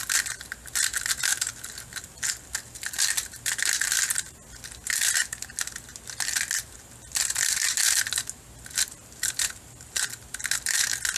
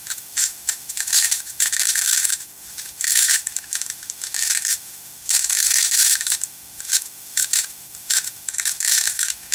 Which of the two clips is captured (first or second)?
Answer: first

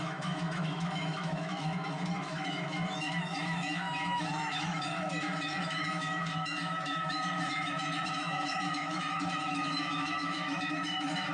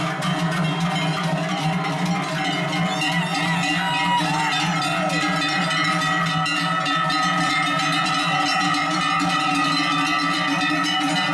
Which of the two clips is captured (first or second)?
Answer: second